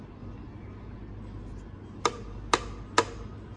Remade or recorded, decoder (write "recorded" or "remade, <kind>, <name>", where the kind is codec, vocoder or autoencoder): recorded